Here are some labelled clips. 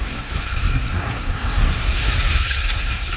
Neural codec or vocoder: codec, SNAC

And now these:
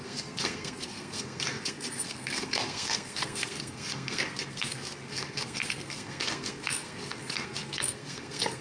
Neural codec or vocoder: codec, SNAC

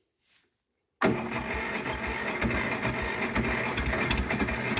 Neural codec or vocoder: none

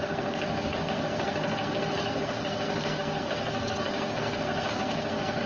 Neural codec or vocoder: codec, SNAC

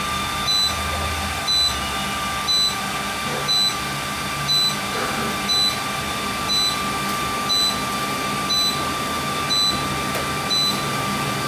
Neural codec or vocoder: none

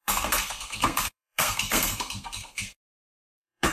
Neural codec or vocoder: codec, SNAC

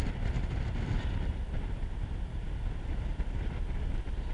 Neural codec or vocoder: none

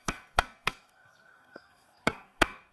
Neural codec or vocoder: codec, SNAC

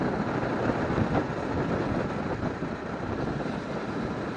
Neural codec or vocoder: none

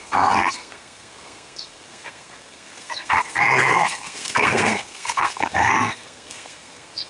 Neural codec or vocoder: codec, SNAC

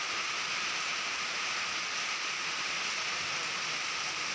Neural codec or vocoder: none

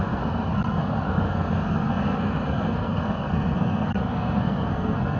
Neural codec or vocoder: codec, SNAC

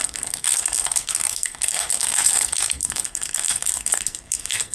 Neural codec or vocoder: codec, SNAC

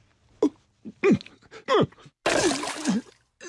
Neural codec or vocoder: none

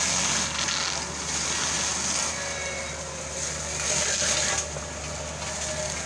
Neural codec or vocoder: none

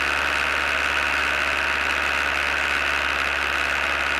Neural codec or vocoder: none